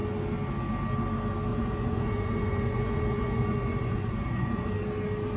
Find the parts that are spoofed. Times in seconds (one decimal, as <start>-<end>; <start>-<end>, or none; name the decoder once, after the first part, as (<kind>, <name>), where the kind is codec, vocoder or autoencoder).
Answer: 1.5-4.7 (vocoder, Vocos)

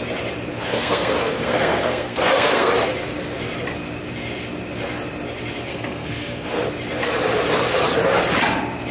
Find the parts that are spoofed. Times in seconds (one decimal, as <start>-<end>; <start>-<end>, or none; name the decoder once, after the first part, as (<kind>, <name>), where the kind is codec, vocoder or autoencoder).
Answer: 0.5-2.7 (codec, SNAC); 5.7-6.6

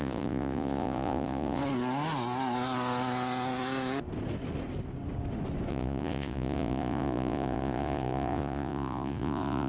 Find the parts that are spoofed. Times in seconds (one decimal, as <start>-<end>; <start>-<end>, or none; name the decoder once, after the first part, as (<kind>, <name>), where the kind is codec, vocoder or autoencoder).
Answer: 0.0-1.6 (vocoder, Vocos); 5.7-9.7

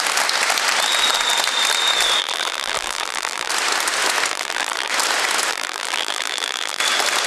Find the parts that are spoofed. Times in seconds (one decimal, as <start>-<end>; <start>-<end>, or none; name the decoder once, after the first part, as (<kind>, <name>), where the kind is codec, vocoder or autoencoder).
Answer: 2.2-3.5 (vocoder, BigVGAN v2); 4.3-4.9; 5.5-6.8